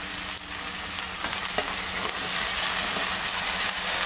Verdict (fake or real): real